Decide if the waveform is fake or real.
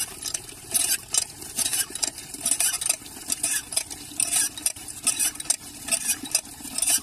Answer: fake